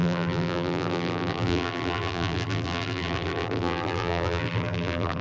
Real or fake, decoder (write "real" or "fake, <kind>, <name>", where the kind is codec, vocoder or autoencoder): fake, vocoder, BigVGAN v2